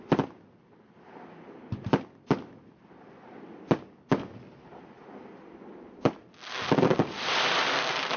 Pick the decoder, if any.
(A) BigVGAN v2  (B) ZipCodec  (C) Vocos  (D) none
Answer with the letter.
D